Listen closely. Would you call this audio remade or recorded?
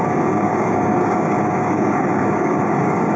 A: remade